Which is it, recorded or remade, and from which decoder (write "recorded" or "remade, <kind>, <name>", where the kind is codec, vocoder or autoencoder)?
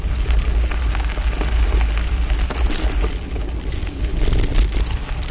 recorded